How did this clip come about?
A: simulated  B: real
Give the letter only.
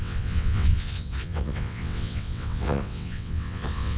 A